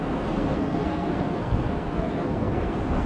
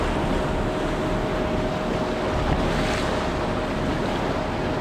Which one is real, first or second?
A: second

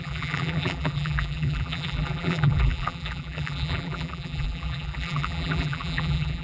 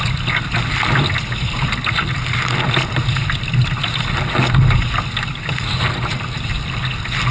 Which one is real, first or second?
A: second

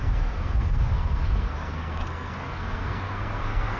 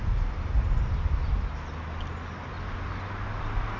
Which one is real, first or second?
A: second